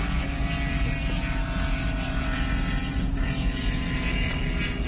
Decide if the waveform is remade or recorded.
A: recorded